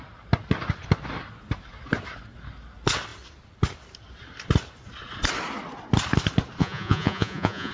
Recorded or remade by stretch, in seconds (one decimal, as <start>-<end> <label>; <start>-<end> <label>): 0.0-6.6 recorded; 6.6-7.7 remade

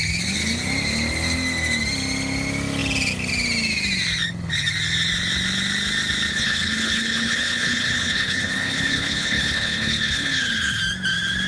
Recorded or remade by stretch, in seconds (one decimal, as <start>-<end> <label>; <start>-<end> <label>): 0.0-6.3 recorded; 6.3-10.8 remade; 10.8-11.5 recorded

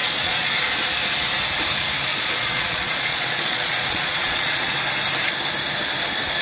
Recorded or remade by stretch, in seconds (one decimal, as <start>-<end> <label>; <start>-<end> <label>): 0.0-0.6 remade; 0.6-2.1 recorded; 2.1-4.7 remade; 4.7-6.4 recorded

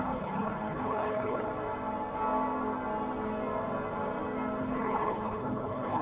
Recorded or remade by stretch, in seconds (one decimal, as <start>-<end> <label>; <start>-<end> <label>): 0.0-1.5 remade; 1.5-4.6 recorded; 4.6-6.0 remade